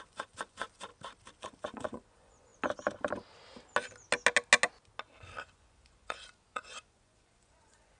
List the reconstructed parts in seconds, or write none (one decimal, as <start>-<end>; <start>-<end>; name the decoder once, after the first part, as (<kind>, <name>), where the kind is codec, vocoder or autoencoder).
0.0-0.9 (vocoder, Vocos); 1.4-2.5; 5.4-8.0